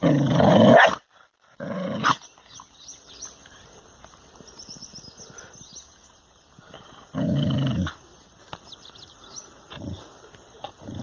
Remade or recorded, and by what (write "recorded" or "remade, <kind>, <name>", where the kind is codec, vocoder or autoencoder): recorded